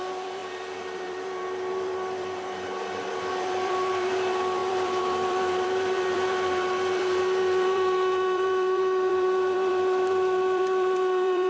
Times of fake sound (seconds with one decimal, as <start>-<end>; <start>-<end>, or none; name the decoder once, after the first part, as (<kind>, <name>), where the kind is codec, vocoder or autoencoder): 0.0-11.5 (vocoder, BigVGAN v2)